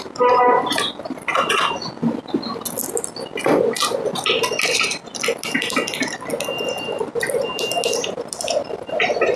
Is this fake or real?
real